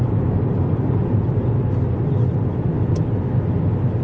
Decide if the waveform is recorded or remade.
recorded